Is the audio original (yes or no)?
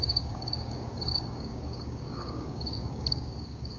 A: no